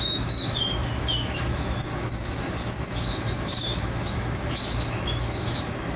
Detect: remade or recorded remade